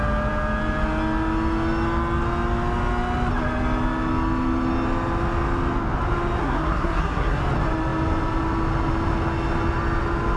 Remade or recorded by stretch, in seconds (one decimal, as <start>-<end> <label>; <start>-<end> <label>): 0.0-6.4 recorded; 6.4-7.4 remade; 7.4-10.4 recorded